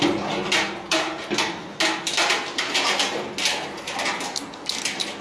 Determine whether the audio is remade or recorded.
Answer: recorded